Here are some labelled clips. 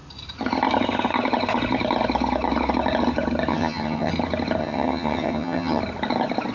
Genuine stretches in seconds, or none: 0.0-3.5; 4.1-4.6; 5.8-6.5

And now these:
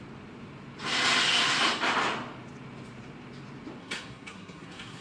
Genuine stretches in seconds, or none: 0.0-3.8

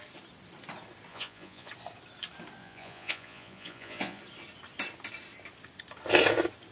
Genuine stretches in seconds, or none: 0.0-1.1; 1.7-2.6; 4.2-6.7